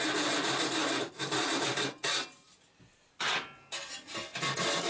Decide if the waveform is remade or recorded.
recorded